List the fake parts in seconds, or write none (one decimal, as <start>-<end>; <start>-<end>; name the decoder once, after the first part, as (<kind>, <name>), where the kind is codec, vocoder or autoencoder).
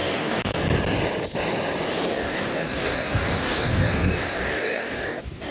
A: 0.0-0.6 (codec, DAC); 2.1-5.5